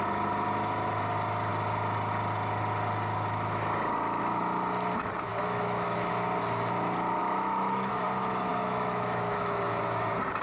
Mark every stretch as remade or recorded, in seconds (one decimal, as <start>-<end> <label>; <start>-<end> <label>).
0.0-5.3 recorded; 5.3-6.1 remade; 6.1-7.2 recorded; 7.2-7.9 remade; 7.9-8.5 recorded; 8.5-9.6 remade; 9.6-10.4 recorded